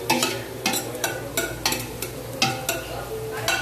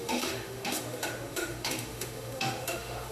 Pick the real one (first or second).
first